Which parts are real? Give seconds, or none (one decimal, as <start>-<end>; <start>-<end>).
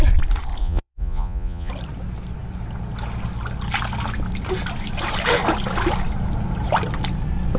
0.0-0.6; 1.7-7.6